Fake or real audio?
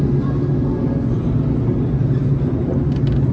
real